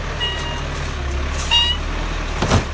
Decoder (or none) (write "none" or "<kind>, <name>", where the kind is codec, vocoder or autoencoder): none